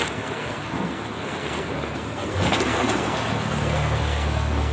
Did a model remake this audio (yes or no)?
yes